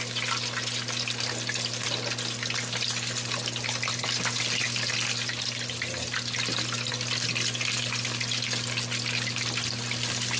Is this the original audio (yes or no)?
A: yes